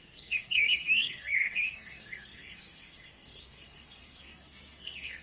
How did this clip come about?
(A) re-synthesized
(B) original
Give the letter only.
A